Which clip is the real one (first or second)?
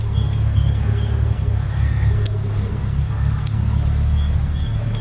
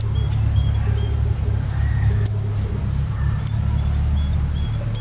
second